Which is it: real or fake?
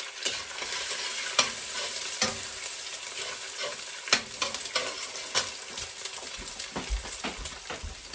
real